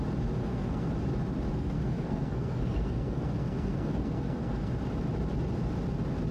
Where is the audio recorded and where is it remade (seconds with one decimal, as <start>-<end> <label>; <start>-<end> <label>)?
0.0-0.4 recorded; 0.4-0.9 remade; 0.9-1.5 recorded; 1.5-4.7 remade; 4.7-6.3 recorded